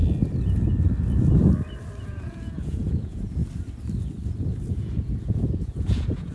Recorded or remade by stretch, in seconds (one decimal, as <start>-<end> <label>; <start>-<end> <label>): 0.0-2.0 recorded; 2.0-3.4 remade; 3.4-4.7 recorded; 4.7-6.3 remade